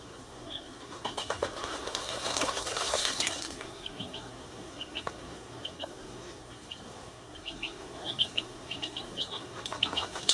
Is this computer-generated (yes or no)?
yes